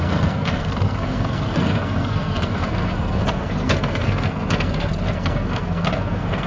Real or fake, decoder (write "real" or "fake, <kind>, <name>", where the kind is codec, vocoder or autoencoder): fake, codec, SNAC